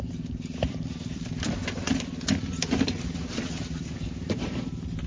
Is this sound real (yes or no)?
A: no